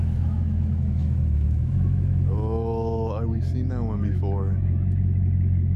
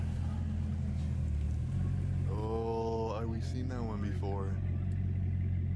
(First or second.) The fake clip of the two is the first